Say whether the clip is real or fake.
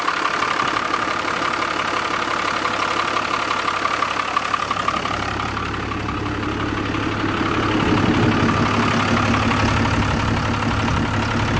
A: real